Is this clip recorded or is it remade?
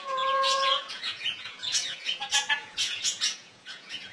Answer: remade